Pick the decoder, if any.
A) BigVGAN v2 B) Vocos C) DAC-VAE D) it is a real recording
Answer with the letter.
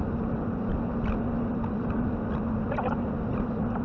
D